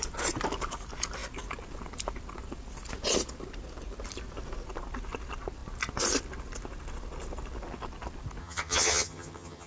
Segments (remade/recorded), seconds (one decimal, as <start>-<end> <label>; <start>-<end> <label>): 0.0-8.4 recorded; 8.4-9.7 remade